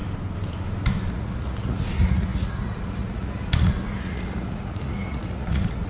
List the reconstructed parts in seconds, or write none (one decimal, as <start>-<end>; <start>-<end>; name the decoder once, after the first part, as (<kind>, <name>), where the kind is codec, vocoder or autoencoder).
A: 1.1-5.9 (vocoder, Vocos)